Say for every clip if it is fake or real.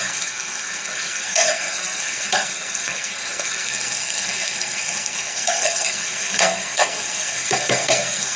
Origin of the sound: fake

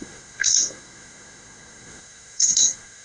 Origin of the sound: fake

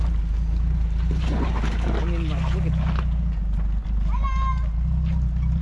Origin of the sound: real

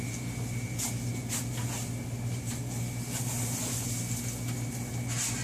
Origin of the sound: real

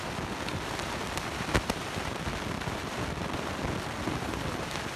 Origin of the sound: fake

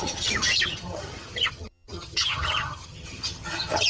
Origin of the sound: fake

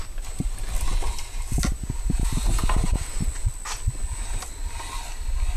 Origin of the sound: real